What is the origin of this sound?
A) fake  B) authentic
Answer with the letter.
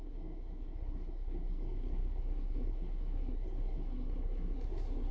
A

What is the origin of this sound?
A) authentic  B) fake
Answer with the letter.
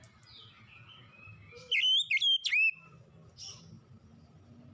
A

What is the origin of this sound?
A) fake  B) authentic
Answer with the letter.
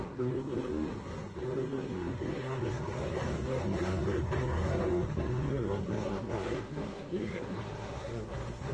A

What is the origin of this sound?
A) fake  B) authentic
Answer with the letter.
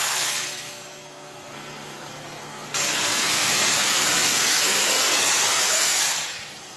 A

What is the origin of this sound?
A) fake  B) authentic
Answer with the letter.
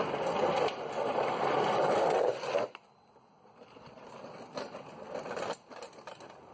B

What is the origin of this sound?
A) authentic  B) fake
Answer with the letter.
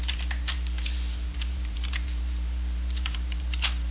B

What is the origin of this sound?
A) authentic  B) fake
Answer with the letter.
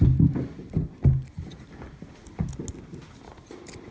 A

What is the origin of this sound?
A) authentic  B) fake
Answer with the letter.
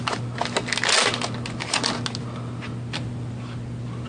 A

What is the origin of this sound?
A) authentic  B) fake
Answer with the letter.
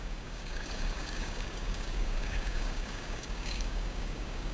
B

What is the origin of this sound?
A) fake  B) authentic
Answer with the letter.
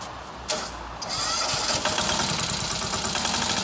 B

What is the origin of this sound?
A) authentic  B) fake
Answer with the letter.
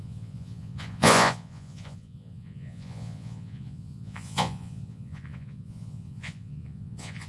B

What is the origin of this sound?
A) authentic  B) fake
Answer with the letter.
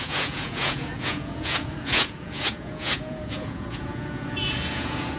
B